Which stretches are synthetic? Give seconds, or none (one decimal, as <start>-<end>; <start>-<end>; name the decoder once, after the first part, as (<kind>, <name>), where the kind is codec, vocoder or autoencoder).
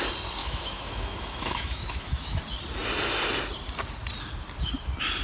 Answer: 0.4-2.4 (autoencoder, DAC-VAE)